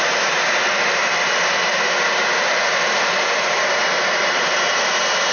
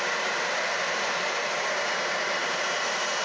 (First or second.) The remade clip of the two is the second